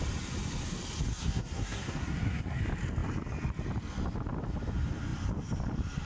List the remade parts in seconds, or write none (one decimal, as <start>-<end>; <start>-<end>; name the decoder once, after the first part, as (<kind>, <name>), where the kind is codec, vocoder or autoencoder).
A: 1.1-2.6 (codec, SNAC)